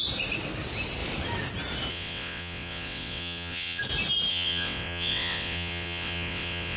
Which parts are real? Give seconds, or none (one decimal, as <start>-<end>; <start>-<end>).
0.0-1.9; 3.8-4.3